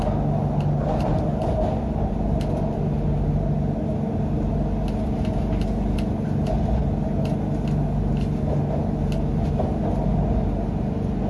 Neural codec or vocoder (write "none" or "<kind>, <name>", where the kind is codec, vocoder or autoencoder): none